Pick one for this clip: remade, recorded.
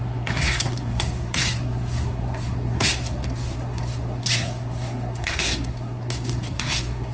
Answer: remade